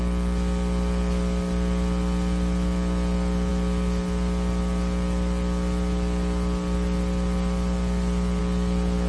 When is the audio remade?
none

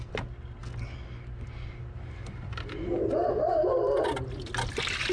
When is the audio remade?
none